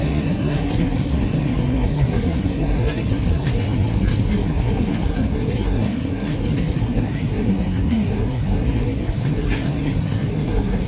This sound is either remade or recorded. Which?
remade